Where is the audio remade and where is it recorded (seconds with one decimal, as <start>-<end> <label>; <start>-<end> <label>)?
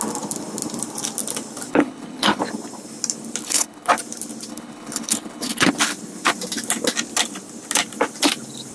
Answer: 0.0-1.7 recorded; 1.7-2.4 remade; 2.4-3.4 recorded; 3.4-3.9 remade; 3.9-4.5 recorded; 4.5-5.7 remade; 5.7-8.7 recorded